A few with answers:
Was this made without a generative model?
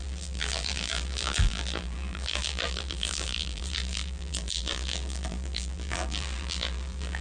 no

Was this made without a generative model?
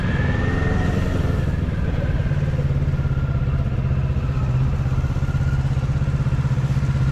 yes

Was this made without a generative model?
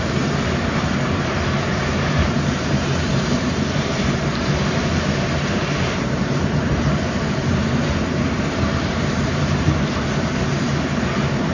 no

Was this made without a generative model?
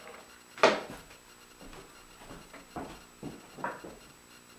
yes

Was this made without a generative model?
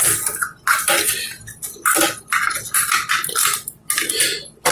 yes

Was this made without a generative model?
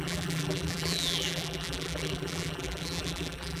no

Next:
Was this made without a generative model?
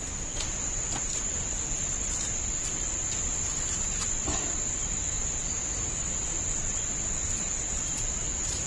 yes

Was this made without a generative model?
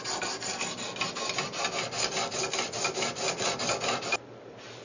yes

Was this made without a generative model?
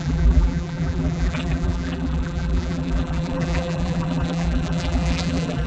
no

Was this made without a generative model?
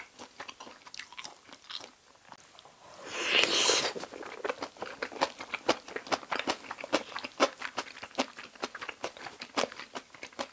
yes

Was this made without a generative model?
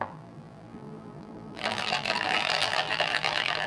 no